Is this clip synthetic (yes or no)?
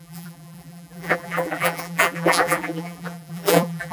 yes